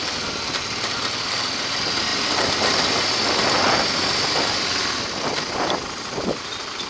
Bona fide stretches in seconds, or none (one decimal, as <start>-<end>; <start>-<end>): 0.0-6.9